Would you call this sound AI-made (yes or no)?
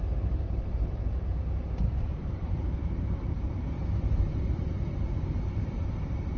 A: yes